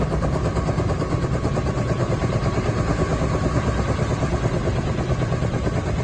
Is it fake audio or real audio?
real